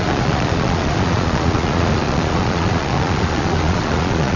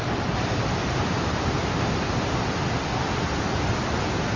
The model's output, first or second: first